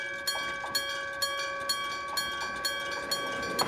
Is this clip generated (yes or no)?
no